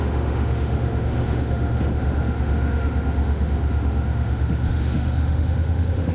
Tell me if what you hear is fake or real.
fake